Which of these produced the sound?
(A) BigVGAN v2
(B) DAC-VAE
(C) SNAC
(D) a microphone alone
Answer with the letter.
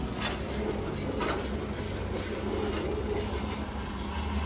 D